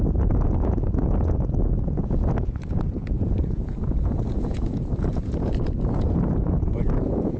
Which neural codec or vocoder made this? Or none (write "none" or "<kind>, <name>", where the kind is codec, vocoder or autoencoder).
vocoder, Vocos